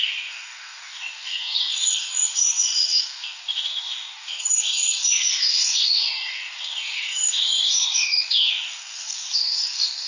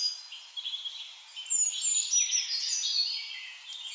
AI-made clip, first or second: first